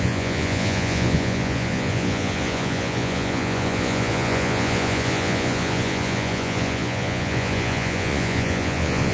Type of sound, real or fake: fake